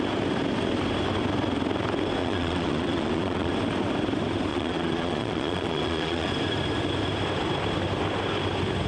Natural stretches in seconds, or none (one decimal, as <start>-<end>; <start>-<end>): 0.0-2.2; 3.5-4.5; 6.3-8.9